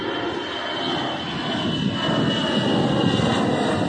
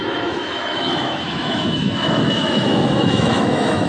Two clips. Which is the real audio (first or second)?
first